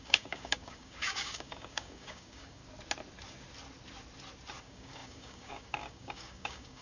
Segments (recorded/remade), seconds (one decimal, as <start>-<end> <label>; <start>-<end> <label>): 0.0-2.6 remade; 2.6-4.6 recorded; 4.6-6.8 remade

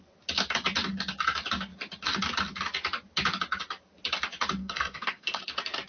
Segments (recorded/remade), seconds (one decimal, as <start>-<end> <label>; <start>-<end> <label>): 0.0-4.6 recorded; 4.6-5.4 remade; 5.4-5.9 recorded

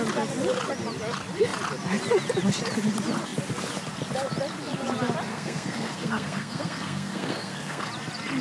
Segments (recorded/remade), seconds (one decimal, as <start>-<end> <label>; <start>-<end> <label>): 0.0-5.3 recorded; 5.3-7.9 remade; 7.9-8.4 recorded

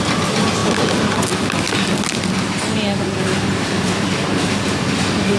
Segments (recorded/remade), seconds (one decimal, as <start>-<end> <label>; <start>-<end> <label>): 0.0-5.4 recorded

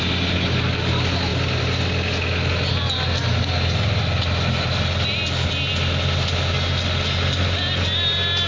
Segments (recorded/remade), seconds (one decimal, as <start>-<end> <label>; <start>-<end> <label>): 0.0-8.5 recorded

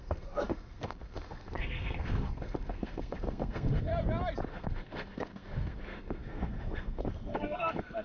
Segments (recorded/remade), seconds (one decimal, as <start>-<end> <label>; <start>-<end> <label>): 0.0-3.9 remade; 3.9-4.5 recorded; 4.5-8.0 remade